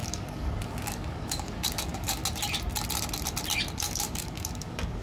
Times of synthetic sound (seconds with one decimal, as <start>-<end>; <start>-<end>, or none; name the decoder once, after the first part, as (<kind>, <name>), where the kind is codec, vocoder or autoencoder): 0.0-2.2 (codec, DAC); 3.8-5.0